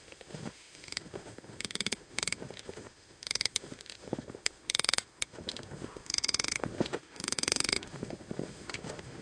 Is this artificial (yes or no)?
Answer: yes